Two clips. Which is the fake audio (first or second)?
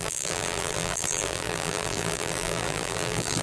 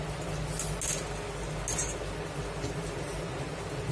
first